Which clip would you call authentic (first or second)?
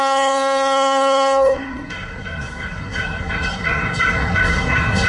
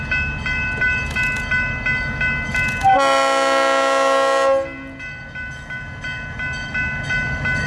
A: second